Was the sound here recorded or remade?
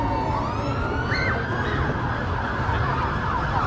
recorded